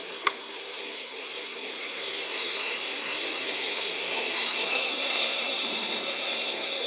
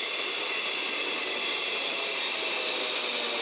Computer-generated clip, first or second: first